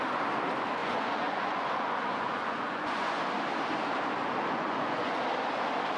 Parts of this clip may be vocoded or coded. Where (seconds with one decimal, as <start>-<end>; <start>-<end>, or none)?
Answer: 0.8-3.2; 4.5-5.2